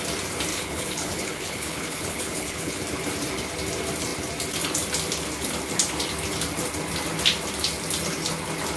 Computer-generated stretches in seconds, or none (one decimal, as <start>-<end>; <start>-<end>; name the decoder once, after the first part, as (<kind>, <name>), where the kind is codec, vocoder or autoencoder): 0.5-2.8 (codec, HILCodec)